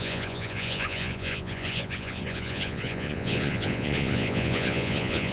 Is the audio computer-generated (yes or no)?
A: yes